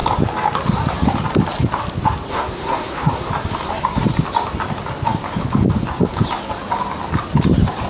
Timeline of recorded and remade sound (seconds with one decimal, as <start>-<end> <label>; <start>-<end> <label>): 0.0-2.3 recorded; 2.3-3.3 remade; 3.3-7.9 recorded